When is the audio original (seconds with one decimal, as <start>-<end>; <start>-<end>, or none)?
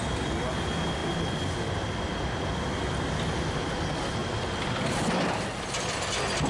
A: 0.0-6.5